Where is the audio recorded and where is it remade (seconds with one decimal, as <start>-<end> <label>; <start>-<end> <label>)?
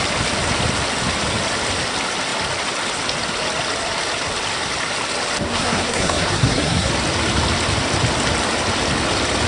0.0-5.5 recorded; 5.5-6.9 remade; 6.9-9.5 recorded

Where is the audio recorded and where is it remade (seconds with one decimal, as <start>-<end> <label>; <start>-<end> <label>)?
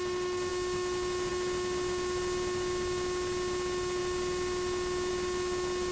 0.0-5.9 recorded